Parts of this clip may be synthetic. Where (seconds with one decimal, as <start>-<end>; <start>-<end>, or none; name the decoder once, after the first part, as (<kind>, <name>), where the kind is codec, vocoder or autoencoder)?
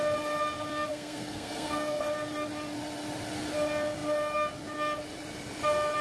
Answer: 0.9-2.0 (codec, SNAC)